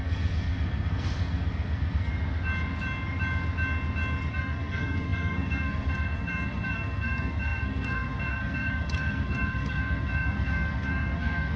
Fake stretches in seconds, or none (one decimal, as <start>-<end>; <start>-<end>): 0.0-2.1; 4.3-11.6